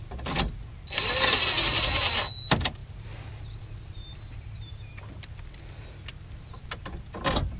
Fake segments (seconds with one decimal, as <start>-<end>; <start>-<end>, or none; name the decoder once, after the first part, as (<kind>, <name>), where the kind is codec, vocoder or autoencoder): none